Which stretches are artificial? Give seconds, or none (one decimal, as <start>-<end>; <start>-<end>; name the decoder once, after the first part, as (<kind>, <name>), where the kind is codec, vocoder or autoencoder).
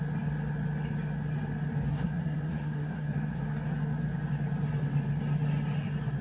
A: 1.9-3.4 (codec, SNAC)